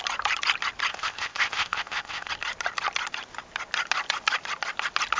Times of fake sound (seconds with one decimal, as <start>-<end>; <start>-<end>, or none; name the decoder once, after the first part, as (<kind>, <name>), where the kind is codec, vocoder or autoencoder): 0.9-2.3 (codec, ZipCodec)